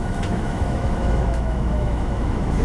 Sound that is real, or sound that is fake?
fake